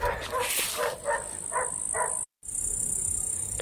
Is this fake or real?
real